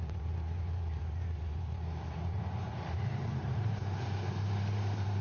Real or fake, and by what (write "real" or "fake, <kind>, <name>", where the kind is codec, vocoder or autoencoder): fake, vocoder, BigVGAN v2